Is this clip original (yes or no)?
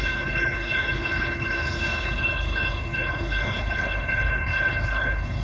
no